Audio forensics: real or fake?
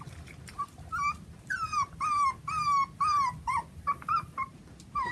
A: real